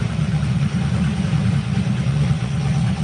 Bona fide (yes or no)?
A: no